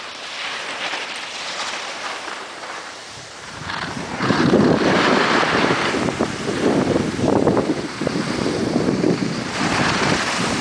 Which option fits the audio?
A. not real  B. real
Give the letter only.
A